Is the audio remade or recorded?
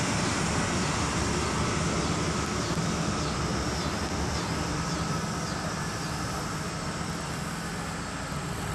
recorded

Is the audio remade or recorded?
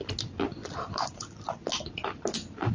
recorded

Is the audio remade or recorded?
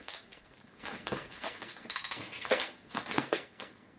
remade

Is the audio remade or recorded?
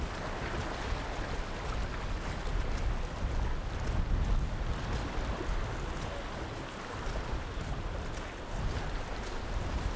recorded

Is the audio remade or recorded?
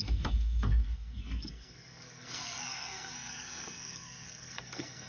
remade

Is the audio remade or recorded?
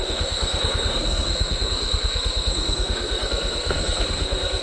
remade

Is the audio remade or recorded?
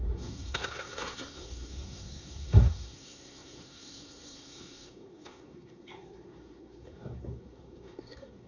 remade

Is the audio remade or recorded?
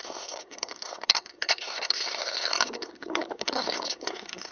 remade